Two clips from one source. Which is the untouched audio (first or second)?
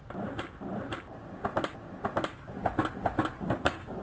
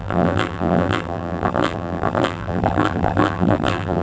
first